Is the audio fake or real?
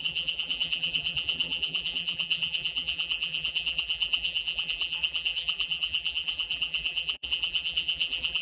fake